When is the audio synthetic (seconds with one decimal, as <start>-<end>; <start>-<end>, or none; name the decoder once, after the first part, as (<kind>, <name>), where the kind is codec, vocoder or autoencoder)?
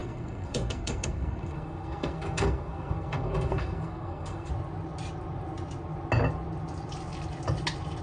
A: 0.0-4.5 (codec, SNAC)